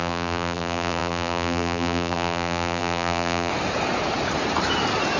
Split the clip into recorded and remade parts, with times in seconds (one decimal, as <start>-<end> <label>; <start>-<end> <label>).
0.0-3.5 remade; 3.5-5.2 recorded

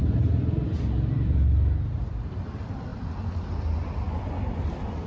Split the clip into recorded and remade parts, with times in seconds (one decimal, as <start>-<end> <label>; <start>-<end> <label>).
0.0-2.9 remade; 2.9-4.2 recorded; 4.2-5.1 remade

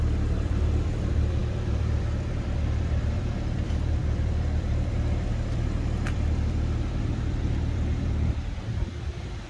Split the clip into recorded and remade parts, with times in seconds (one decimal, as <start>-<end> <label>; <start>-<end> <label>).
0.0-9.5 remade

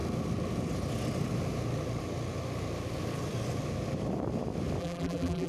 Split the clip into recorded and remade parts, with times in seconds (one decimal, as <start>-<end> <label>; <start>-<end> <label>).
0.0-4.8 recorded; 4.8-5.5 remade

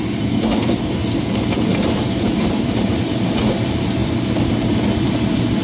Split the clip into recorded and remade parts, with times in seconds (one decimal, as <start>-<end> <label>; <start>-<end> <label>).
0.0-1.7 recorded; 1.7-3.4 remade; 3.4-5.6 recorded

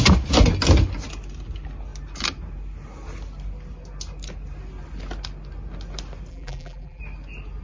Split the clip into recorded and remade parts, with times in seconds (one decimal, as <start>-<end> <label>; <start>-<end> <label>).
0.0-6.3 recorded; 6.3-7.0 remade; 7.0-7.6 recorded

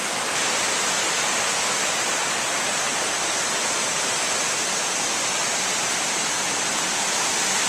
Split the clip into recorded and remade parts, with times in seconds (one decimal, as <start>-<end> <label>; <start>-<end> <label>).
0.0-5.4 recorded; 5.4-6.3 remade; 6.3-7.7 recorded

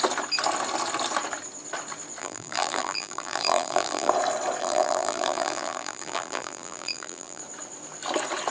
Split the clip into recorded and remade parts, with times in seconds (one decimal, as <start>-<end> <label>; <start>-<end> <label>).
0.0-2.2 recorded; 2.2-4.1 remade; 4.1-4.6 recorded; 4.6-7.4 remade; 7.4-8.5 recorded